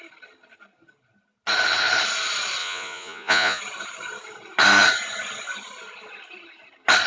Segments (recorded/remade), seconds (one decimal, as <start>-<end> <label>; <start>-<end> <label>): 0.0-2.6 recorded; 2.6-3.6 remade; 3.6-7.1 recorded